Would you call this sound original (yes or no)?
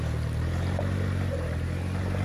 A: yes